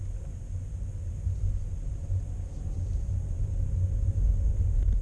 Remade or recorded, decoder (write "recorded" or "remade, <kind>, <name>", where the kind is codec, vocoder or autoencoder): recorded